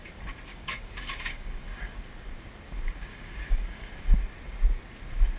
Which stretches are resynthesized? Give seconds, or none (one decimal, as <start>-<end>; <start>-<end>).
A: 0.5-1.8; 3.1-3.9